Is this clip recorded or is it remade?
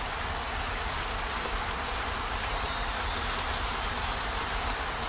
recorded